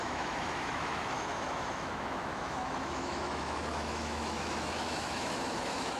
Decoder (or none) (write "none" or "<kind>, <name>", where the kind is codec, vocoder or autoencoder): autoencoder, DAC-VAE